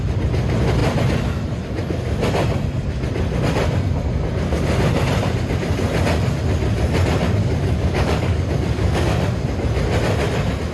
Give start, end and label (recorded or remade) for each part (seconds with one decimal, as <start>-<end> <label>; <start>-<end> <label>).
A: 0.0-7.4 recorded; 7.4-9.1 remade; 9.1-10.7 recorded